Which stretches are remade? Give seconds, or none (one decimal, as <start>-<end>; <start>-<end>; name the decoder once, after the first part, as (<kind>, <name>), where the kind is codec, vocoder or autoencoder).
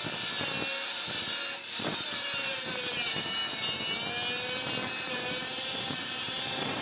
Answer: 1.8-3.4 (vocoder, BigVGAN v2); 5.1-6.8